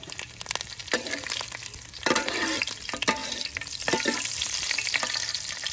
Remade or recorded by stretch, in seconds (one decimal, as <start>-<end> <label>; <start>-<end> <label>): 0.0-5.7 recorded